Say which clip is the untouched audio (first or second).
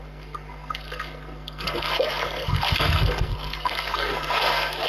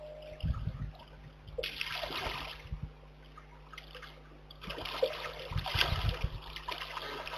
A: second